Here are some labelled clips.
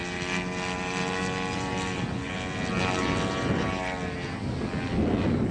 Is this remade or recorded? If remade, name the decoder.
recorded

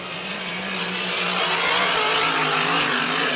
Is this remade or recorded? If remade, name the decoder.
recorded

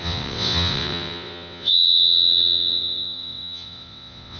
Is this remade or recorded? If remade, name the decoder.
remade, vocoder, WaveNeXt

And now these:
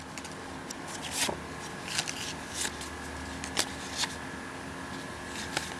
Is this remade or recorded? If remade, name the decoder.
recorded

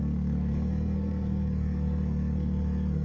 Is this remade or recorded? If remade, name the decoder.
remade, codec, SNAC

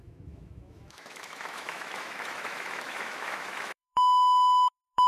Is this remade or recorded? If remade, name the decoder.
remade, autoencoder, DAC-VAE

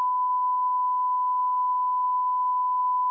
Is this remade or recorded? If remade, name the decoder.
recorded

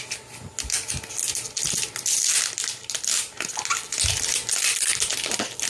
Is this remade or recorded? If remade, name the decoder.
recorded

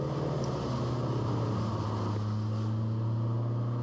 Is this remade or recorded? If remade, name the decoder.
recorded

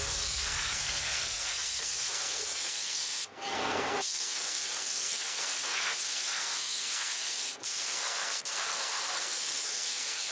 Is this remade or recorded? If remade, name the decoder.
remade, codec, SNAC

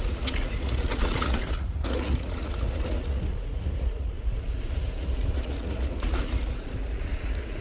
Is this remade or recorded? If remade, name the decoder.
remade, vocoder, Vocos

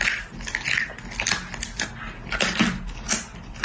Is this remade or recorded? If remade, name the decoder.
recorded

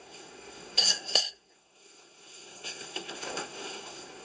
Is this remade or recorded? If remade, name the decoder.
remade, codec, SNAC